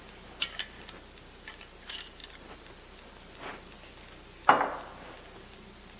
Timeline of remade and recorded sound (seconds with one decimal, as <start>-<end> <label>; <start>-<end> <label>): 0.0-6.0 recorded